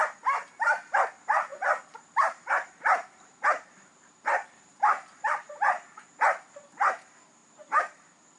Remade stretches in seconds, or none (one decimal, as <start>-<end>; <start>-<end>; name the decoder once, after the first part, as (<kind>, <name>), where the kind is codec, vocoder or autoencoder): 1.5-6.5 (vocoder, BigVGAN v2); 7.4-8.4